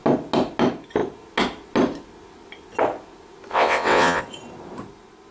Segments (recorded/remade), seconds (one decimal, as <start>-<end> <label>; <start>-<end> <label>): 0.0-3.5 recorded; 3.5-4.2 remade; 4.2-5.3 recorded